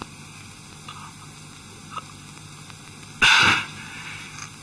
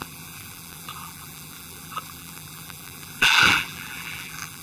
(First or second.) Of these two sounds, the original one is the first